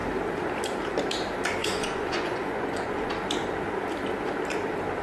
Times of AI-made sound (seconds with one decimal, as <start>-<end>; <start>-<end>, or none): 1.6-3.1

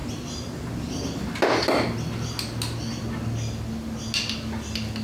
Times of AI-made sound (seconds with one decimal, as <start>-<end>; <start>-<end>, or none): none

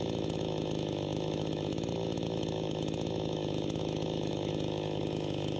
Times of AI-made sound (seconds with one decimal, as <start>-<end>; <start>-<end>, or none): 0.0-5.6

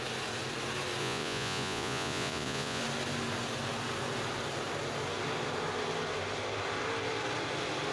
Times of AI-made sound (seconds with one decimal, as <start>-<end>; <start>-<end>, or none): 1.0-2.8

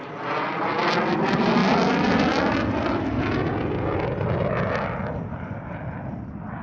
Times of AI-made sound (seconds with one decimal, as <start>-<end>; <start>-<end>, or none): none

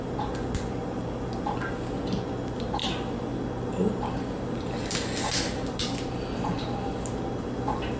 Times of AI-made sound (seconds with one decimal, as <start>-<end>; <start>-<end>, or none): none